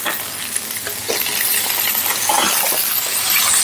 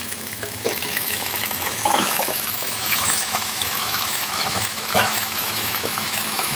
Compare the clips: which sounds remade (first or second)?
second